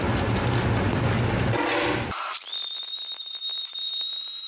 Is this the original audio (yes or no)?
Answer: yes